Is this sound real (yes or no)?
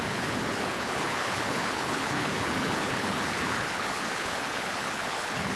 no